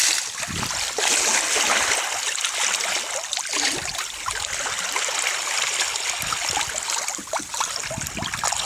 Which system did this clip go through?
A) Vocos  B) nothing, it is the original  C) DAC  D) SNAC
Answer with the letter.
B